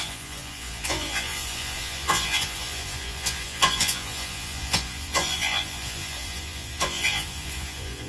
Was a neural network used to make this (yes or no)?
yes